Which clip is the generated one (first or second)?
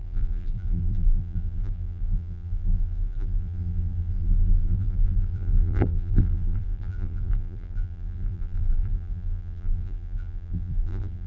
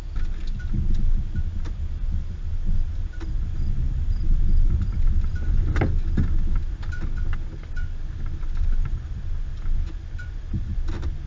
first